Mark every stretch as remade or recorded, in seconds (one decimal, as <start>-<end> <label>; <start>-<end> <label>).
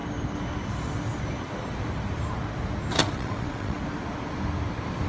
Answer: 0.0-3.0 recorded; 3.0-3.8 remade; 3.8-5.1 recorded